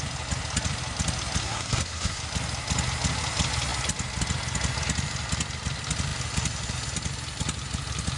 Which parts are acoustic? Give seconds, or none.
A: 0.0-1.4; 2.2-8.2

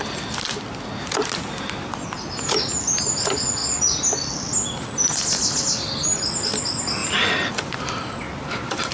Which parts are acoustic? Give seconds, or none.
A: 0.0-8.9